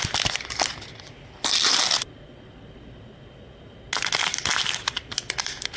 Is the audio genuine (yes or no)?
yes